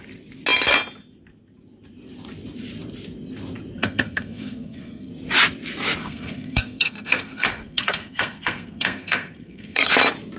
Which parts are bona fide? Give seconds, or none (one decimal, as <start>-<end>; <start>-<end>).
0.0-3.8; 5.1-6.0; 9.9-10.4